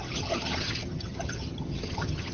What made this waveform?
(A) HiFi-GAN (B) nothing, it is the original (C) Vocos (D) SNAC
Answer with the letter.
A